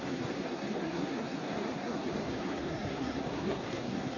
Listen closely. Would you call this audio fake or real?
fake